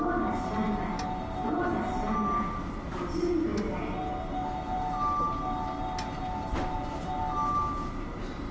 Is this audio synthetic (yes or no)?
no